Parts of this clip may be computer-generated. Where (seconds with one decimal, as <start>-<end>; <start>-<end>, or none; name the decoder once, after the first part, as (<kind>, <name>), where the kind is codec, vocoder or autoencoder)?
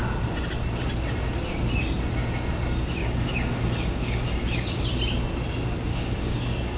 3.0-4.8 (codec, DAC); 5.9-6.8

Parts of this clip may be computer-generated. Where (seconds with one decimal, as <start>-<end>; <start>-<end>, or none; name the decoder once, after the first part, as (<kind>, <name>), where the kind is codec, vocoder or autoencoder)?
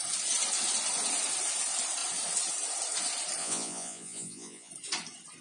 3.4-4.7 (vocoder, Vocos)